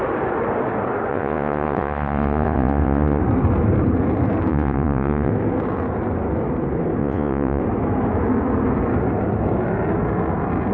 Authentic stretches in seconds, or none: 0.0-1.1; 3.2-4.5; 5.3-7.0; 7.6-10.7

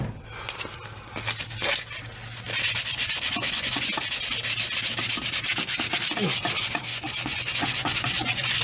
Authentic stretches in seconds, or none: 0.0-2.9; 3.9-6.9

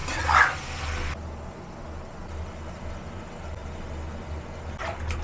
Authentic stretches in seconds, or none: 0.0-5.2